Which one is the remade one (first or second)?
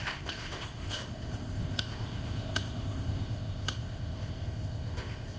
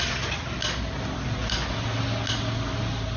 first